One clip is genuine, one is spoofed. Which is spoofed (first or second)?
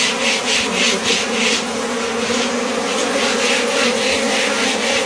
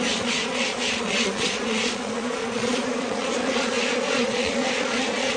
second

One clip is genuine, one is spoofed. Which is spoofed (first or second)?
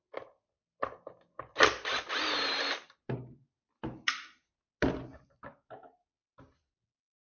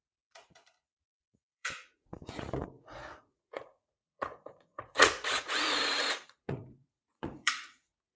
second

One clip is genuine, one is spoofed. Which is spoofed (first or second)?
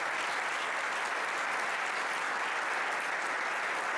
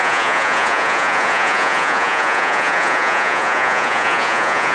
second